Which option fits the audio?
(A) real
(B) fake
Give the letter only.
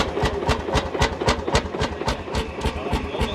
B